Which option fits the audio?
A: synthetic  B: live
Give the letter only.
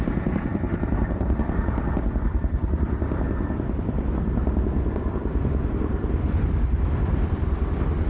B